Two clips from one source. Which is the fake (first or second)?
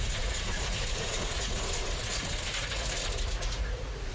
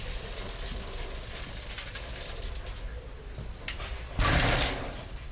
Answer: first